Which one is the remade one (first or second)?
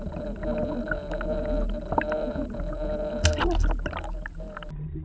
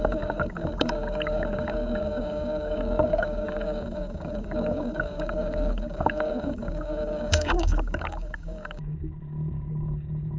second